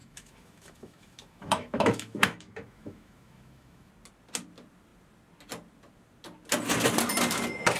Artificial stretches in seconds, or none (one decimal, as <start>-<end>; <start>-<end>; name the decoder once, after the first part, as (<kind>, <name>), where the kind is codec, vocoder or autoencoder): 0.0-3.9 (autoencoder, DAC-VAE)